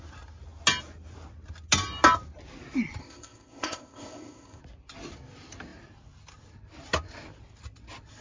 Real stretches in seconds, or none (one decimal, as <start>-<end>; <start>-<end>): 0.0-3.0; 4.6-8.2